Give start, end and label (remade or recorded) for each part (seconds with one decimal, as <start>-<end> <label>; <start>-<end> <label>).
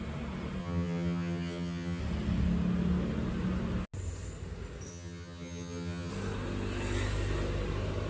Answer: 0.0-0.6 recorded; 0.6-2.0 remade; 2.0-4.9 recorded; 4.9-6.1 remade; 6.1-8.1 recorded